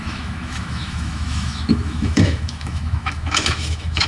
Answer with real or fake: fake